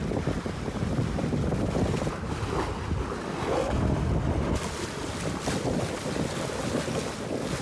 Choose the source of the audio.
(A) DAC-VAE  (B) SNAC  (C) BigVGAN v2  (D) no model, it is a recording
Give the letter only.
D